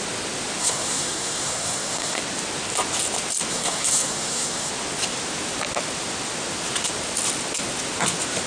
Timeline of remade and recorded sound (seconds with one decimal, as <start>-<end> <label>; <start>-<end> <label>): 0.0-0.6 recorded; 0.6-2.2 remade; 2.2-3.5 recorded; 3.5-4.7 remade; 4.7-8.5 recorded

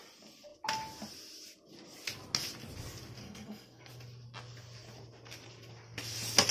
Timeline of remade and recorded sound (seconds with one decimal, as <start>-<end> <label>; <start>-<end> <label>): 0.0-3.2 recorded; 3.2-3.9 remade; 3.9-6.5 recorded

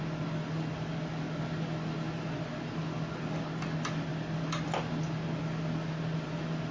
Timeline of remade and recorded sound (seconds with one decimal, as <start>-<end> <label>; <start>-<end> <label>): 0.0-6.7 recorded

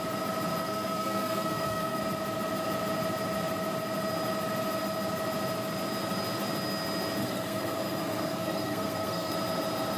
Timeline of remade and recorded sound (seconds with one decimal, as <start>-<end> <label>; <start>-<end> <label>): 0.0-0.6 recorded; 0.6-2.0 remade; 2.0-7.2 recorded; 7.2-9.3 remade; 9.3-10.0 recorded

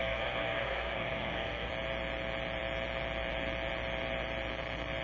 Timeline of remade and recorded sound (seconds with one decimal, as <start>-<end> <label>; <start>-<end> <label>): 0.0-1.7 remade; 1.7-5.0 recorded